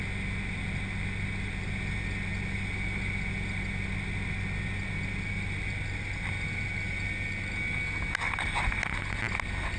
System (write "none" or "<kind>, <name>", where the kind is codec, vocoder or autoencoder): none